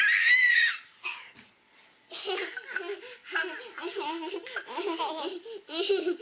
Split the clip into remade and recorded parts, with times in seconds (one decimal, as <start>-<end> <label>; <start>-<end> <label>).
0.0-6.2 recorded